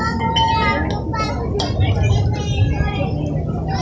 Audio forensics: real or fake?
real